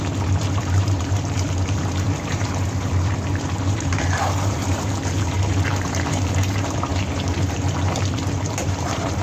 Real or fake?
fake